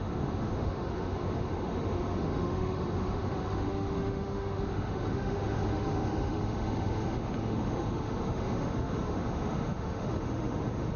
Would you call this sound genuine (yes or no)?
no